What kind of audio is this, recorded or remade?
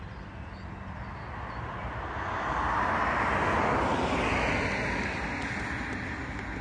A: recorded